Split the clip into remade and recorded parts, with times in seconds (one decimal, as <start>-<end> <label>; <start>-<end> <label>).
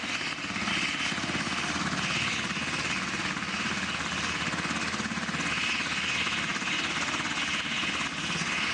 0.0-8.7 recorded